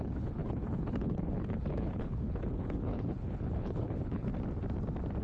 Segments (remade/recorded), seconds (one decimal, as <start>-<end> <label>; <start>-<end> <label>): 0.0-4.3 remade; 4.3-5.2 recorded